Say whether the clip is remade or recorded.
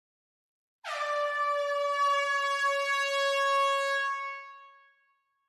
recorded